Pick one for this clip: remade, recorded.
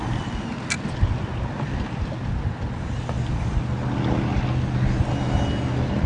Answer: recorded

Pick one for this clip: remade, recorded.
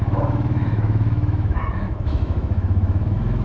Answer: remade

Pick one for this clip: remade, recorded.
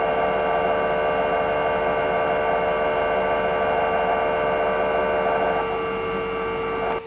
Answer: recorded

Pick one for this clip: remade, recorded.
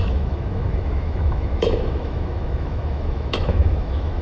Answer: remade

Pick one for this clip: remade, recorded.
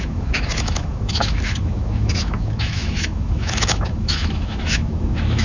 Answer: remade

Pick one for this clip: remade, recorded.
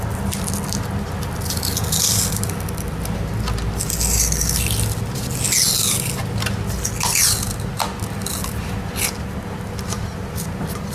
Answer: recorded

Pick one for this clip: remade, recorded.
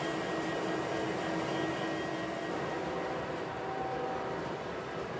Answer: recorded